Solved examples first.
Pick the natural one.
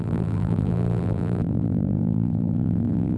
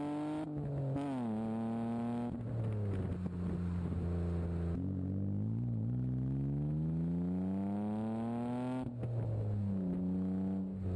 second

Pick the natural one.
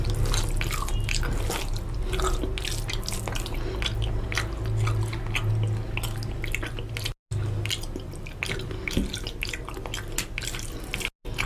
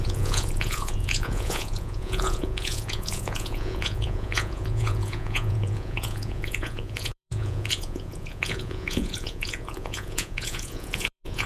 first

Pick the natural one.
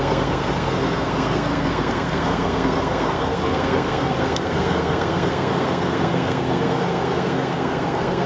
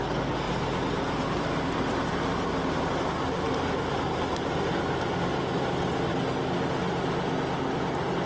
second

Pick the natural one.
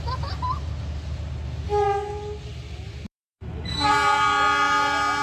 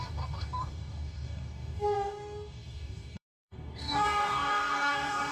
first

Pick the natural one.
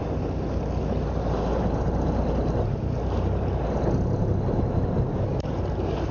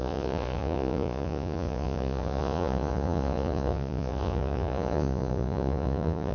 first